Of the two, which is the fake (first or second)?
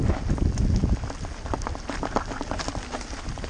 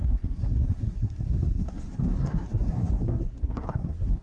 second